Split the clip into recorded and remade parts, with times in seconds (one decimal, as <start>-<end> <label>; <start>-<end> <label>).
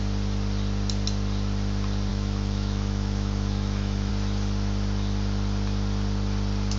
0.0-2.1 recorded; 2.1-4.1 remade; 4.1-6.8 recorded